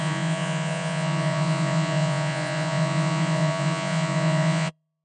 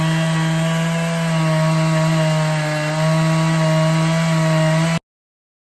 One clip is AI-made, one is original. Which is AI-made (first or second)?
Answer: first